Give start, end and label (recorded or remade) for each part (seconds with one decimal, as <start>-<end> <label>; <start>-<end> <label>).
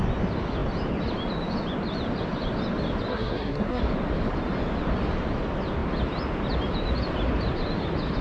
0.0-3.1 recorded; 3.1-3.8 remade; 3.8-8.2 recorded